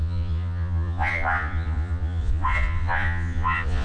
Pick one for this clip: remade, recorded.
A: remade